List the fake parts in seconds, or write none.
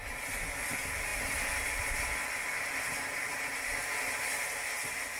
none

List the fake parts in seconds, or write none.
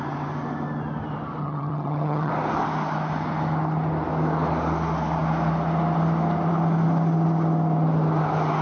1.4-2.3 (vocoder, HiFi-GAN)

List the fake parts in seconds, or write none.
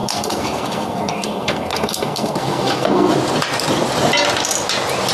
0.0-3.1 (codec, SNAC)